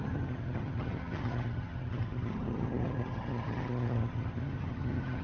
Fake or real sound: fake